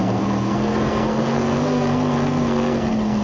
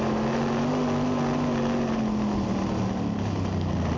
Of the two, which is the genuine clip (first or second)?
second